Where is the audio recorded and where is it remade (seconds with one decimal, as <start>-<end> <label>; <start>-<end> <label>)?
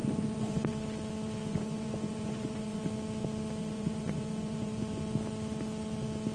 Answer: 0.0-0.7 remade; 0.7-1.5 recorded; 1.5-2.8 remade; 2.8-3.6 recorded; 3.6-4.8 remade; 4.8-6.3 recorded